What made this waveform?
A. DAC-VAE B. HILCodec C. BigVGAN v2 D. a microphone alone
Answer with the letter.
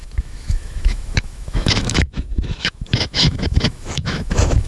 A